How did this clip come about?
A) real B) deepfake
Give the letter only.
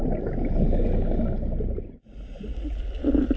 A